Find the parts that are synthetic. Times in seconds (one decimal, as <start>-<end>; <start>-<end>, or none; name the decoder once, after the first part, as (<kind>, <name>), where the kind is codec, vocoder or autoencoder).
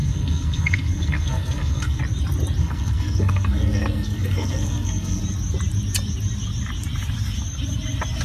0.0-2.0 (codec, SNAC); 2.6-5.2